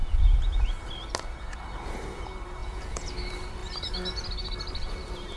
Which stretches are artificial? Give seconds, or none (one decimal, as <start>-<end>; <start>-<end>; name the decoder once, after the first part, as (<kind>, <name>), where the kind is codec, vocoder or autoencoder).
0.0-0.7 (vocoder, Vocos); 2.6-3.1